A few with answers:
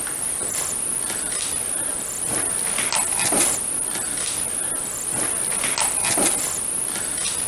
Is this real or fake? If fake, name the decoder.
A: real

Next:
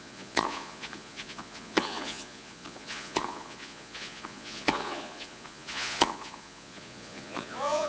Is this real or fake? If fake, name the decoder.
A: fake, vocoder, Vocos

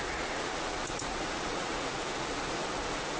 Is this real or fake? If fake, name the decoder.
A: fake, vocoder, Vocos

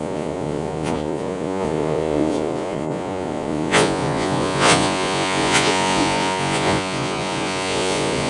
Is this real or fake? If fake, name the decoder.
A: fake, vocoder, Vocos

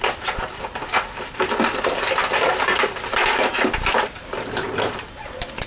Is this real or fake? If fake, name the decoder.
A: real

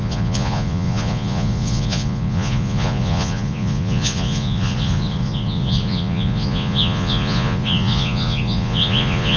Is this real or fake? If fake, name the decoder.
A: fake, vocoder, Vocos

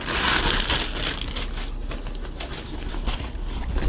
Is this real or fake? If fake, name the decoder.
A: real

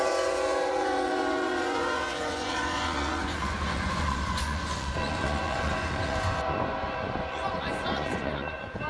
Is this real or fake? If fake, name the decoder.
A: fake, vocoder, Vocos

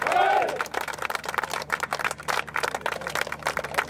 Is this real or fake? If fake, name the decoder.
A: real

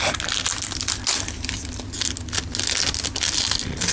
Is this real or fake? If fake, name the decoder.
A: real